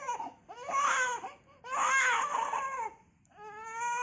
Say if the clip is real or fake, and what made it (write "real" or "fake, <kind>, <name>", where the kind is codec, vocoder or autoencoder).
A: real